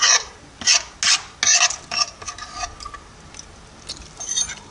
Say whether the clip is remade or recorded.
recorded